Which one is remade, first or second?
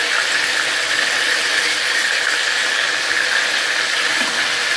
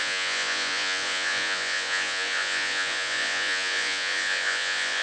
second